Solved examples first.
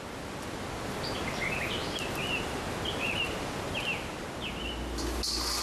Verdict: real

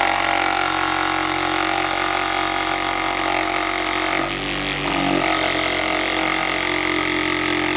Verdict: real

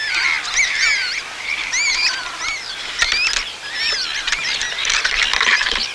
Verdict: real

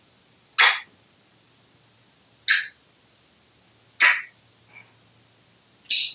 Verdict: real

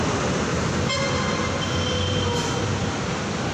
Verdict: real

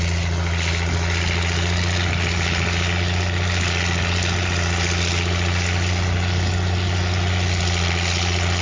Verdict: real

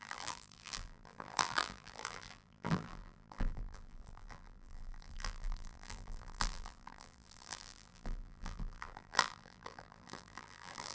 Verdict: fake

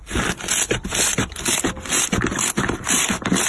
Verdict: real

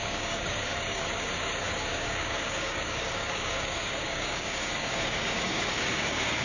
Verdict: fake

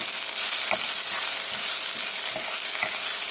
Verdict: real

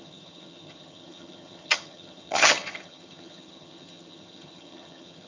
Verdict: fake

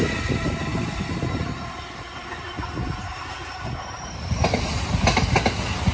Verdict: real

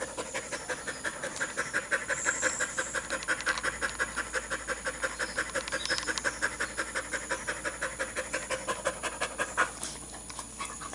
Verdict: real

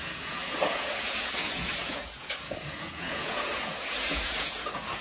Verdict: fake